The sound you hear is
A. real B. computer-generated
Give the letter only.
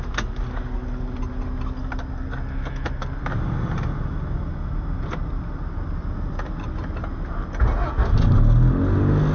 A